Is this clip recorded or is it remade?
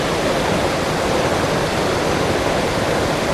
recorded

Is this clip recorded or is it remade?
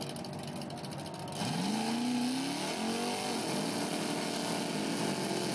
recorded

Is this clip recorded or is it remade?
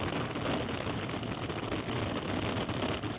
recorded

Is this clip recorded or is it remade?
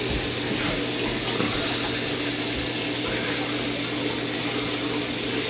recorded